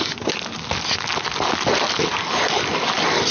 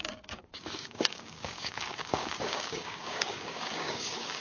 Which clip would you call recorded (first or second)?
first